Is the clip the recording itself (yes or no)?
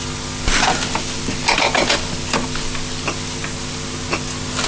yes